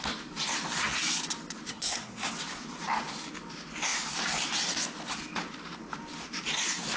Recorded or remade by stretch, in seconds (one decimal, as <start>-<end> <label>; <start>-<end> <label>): 0.0-1.7 recorded; 1.7-2.3 remade; 2.3-7.0 recorded